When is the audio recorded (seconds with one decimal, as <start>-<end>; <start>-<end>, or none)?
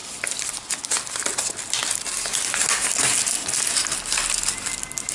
0.0-5.1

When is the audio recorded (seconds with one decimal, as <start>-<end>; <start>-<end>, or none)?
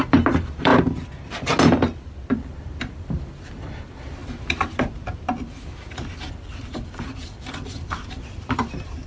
0.7-2.3; 4.2-6.3